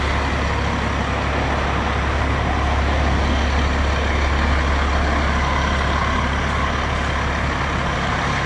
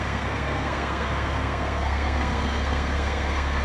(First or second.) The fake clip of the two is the second